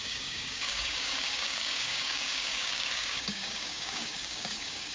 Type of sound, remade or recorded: remade